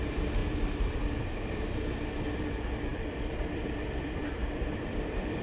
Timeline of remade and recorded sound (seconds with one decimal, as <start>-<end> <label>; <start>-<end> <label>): 0.0-0.4 recorded; 0.4-1.5 remade; 1.5-2.9 recorded; 2.9-5.4 remade